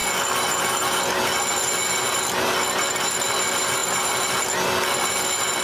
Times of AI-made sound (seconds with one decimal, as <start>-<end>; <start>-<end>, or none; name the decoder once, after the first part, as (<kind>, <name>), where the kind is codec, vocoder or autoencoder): none